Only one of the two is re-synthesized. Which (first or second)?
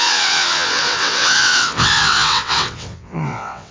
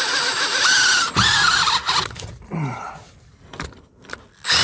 first